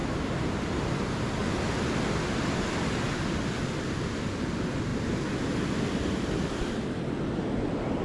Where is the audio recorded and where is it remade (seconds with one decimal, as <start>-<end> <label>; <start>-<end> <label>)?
0.0-4.9 recorded; 4.9-5.4 remade; 5.4-8.0 recorded